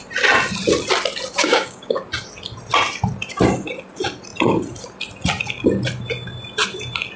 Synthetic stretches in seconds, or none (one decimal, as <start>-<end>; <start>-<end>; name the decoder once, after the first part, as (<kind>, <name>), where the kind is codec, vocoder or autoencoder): 1.4-2.0 (codec, DAC)